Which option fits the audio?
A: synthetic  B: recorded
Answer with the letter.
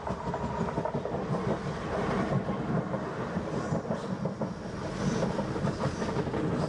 B